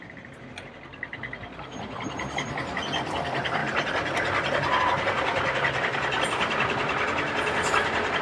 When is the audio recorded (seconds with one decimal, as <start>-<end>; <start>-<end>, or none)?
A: 0.0-8.2